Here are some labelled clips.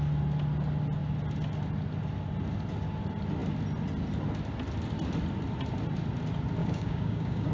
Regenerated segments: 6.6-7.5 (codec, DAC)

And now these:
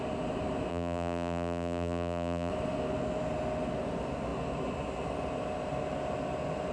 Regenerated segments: 0.7-2.5 (vocoder, BigVGAN v2)

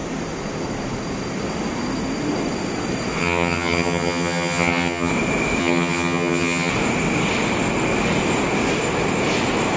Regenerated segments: 3.2-5.1 (vocoder, HiFi-GAN); 5.6-6.7